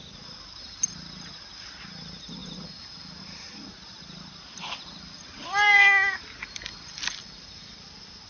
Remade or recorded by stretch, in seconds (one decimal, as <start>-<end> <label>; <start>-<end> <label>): 0.0-8.3 recorded